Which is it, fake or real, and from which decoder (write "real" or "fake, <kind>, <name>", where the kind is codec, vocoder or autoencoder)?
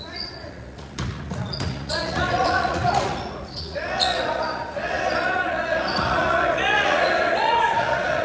fake, vocoder, Vocos